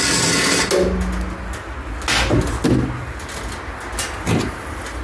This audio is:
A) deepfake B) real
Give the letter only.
B